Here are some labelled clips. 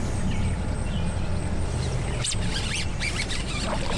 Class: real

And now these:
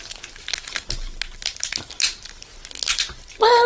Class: real